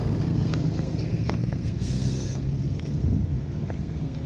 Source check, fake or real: fake